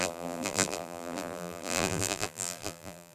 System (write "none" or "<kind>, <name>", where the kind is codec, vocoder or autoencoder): vocoder, BigVGAN v2